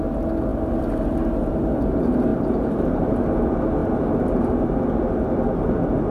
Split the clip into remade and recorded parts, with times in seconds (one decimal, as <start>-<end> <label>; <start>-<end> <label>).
0.0-2.3 recorded; 2.3-3.1 remade; 3.1-6.1 recorded

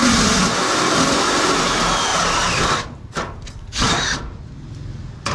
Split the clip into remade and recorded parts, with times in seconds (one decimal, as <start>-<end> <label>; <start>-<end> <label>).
0.0-5.3 remade